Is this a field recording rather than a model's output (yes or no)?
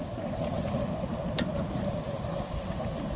yes